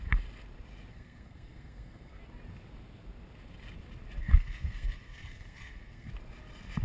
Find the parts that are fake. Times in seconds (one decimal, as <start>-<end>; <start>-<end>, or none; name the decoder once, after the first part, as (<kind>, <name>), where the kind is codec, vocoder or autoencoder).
0.9-2.2 (codec, SNAC); 4.2-6.1